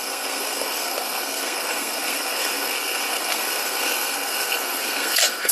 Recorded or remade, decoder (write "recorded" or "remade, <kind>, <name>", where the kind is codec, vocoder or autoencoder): remade, codec, SNAC